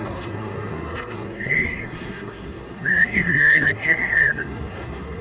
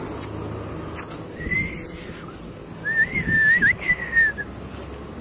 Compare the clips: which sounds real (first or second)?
second